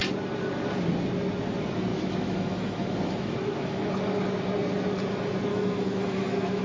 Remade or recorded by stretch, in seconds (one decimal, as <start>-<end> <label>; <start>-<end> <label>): 0.0-1.9 recorded; 1.9-3.9 remade; 3.9-5.5 recorded; 5.5-6.6 remade